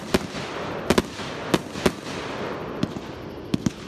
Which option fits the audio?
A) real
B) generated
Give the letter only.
A